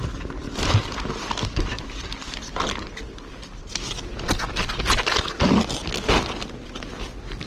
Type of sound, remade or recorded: recorded